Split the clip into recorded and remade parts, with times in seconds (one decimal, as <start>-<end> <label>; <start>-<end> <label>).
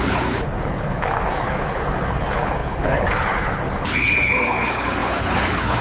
0.0-5.8 remade